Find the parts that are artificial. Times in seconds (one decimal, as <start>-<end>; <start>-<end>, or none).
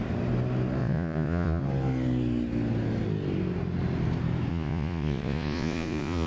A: 0.8-1.6; 4.5-6.3